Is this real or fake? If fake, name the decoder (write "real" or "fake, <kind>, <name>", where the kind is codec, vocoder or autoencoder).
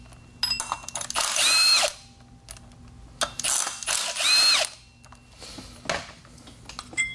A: real